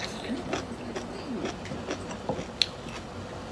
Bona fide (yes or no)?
yes